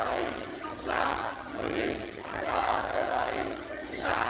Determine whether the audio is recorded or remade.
remade